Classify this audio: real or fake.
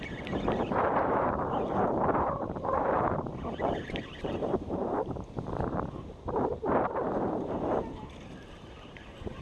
fake